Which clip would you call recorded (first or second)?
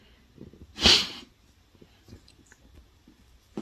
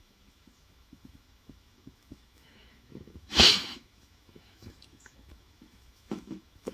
first